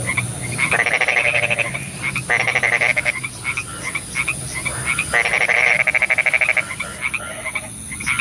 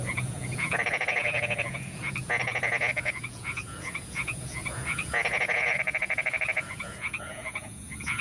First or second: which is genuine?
first